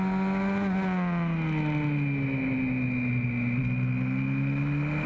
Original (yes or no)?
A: yes